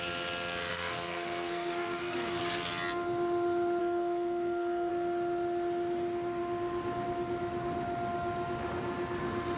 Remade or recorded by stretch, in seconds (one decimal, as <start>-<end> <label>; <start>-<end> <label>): 0.0-0.7 recorded; 0.7-2.4 remade; 2.4-3.8 recorded; 3.8-4.9 remade; 4.9-9.6 recorded